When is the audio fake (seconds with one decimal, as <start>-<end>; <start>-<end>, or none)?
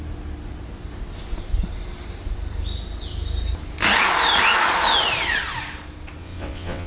6.2-6.9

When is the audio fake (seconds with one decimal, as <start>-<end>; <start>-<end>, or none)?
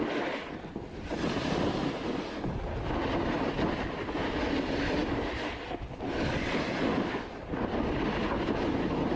none